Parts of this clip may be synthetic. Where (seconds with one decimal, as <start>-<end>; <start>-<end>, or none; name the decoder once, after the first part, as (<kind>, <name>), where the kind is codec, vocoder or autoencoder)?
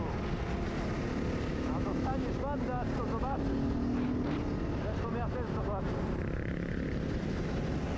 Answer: 1.5-2.1 (autoencoder, DAC-VAE)